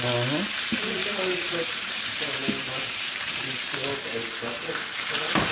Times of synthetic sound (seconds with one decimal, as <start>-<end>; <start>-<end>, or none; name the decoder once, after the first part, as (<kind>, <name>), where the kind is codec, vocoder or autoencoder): 1.0-3.7 (vocoder, BigVGAN v2)